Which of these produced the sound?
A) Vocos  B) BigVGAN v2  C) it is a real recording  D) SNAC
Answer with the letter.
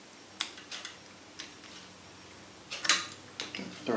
C